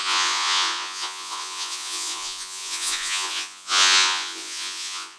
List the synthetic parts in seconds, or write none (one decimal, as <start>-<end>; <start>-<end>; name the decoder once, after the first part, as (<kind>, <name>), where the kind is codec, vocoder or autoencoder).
0.0-5.2 (vocoder, Vocos)

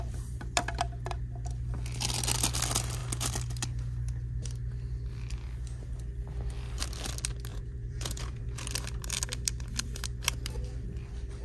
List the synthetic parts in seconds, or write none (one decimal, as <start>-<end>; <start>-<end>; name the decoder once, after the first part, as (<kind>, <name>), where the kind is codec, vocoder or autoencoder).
7.5-8.4 (vocoder, Vocos)